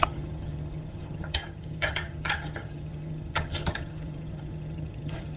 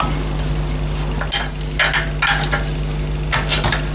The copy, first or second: first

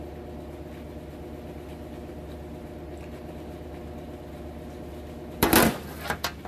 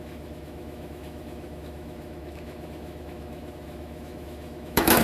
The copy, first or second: second